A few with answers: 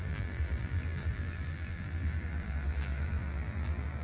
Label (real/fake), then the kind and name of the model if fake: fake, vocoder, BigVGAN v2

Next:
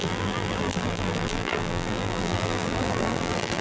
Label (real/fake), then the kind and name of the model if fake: fake, vocoder, BigVGAN v2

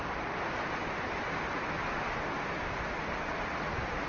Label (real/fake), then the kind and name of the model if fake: real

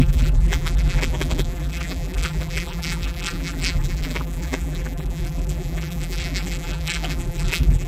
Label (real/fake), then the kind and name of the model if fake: fake, vocoder, BigVGAN v2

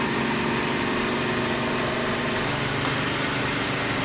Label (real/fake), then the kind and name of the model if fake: fake, vocoder, BigVGAN v2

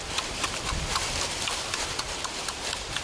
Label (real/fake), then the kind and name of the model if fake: fake, vocoder, BigVGAN v2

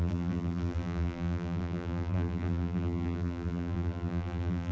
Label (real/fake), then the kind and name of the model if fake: fake, vocoder, BigVGAN v2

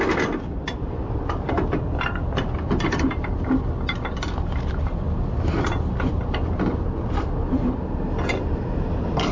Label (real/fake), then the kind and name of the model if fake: fake, vocoder, BigVGAN v2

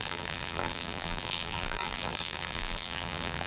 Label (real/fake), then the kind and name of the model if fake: fake, vocoder, BigVGAN v2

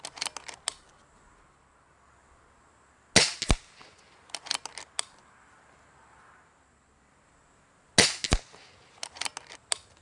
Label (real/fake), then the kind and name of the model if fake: real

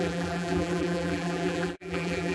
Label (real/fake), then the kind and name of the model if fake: fake, vocoder, BigVGAN v2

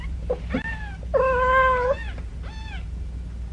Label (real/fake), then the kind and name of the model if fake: real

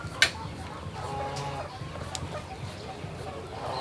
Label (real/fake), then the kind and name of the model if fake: real